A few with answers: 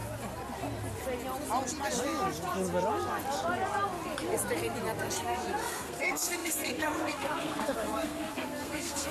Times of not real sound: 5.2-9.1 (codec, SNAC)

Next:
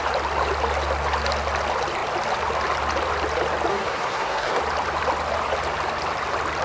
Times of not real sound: 3.7-4.6 (codec, SNAC)

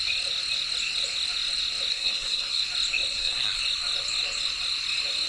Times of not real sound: 1.9-2.6 (codec, SNAC); 3.1-3.6

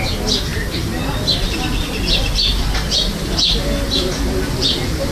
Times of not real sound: none

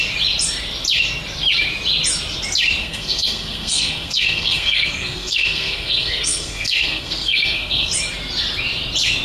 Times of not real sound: 2.8-7.9 (codec, SNAC)